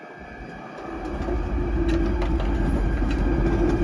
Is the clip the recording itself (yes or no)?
yes